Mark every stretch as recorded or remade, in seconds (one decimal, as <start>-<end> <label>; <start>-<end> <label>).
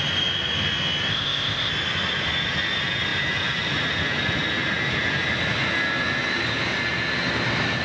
0.0-1.1 recorded; 1.1-1.7 remade; 1.7-7.8 recorded